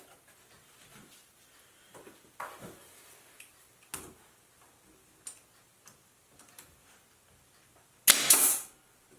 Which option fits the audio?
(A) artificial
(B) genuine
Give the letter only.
B